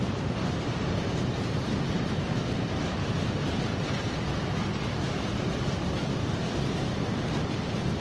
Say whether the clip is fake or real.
fake